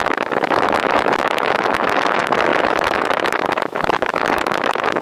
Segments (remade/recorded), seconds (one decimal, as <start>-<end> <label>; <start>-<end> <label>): 0.0-5.0 remade